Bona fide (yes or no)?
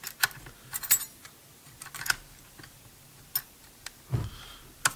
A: yes